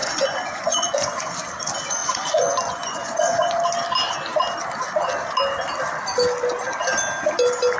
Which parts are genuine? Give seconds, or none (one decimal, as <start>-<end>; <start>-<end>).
1.5-2.0; 3.6-7.8